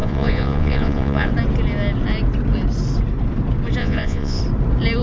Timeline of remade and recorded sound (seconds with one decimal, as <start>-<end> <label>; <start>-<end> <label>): 0.0-1.3 remade; 1.3-3.8 recorded; 3.8-4.4 remade; 4.4-5.0 recorded